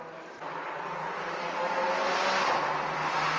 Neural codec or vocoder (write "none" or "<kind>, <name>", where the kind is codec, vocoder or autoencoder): none